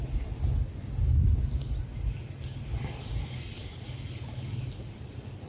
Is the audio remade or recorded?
recorded